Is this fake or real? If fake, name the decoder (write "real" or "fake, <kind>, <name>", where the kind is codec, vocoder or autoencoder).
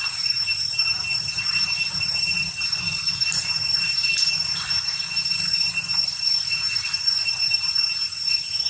real